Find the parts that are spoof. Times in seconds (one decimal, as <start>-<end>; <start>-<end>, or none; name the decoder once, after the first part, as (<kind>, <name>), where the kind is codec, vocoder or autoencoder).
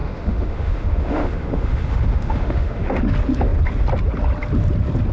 0.0-3.0 (autoencoder, DAC-VAE)